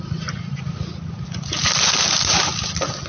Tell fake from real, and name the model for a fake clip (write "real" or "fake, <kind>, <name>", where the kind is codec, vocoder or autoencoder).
real